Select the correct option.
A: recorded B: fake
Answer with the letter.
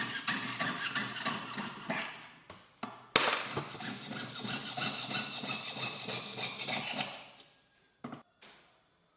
A